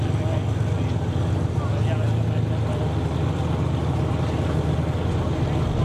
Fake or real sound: real